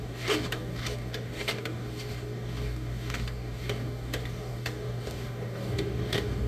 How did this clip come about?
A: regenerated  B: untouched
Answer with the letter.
A